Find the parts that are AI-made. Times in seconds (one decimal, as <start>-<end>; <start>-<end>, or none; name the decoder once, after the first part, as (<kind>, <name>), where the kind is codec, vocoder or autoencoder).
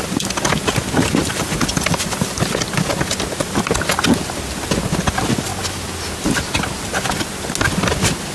1.2-2.5 (vocoder, BigVGAN v2)